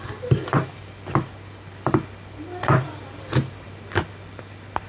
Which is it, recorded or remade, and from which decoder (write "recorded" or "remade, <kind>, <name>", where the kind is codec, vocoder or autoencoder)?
remade, vocoder, BigVGAN v2